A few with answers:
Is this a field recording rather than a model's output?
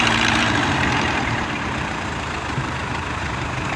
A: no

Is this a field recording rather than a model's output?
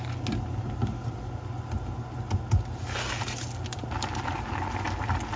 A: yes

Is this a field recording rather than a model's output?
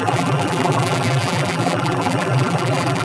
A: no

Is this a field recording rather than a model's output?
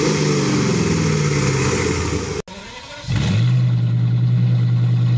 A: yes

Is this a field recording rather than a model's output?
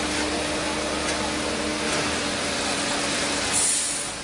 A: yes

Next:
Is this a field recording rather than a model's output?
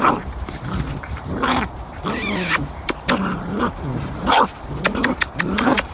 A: no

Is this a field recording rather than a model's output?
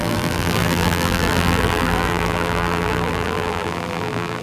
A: no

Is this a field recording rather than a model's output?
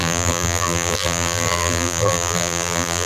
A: no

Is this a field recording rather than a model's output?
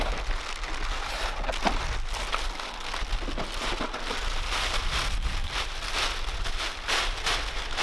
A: yes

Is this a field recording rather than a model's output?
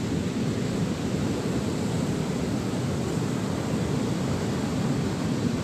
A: yes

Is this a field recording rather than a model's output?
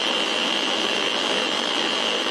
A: no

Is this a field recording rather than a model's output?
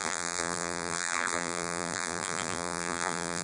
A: no